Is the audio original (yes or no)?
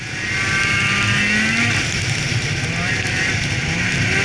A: yes